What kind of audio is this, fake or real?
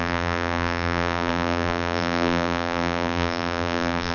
fake